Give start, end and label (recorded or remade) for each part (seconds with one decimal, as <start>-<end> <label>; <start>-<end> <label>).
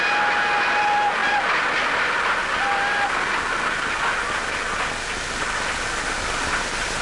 0.0-7.0 recorded